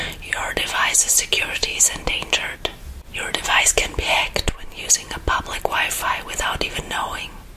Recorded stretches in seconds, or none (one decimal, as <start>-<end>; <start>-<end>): 0.0-7.6